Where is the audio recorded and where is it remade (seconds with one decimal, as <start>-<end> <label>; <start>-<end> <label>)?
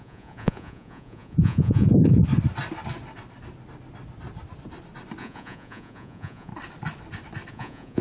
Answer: 0.0-2.2 remade; 2.2-5.2 recorded; 5.2-6.5 remade; 6.5-7.5 recorded; 7.5-8.0 remade